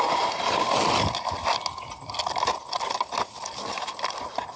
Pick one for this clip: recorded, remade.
recorded